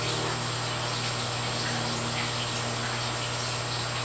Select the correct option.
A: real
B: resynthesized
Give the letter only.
A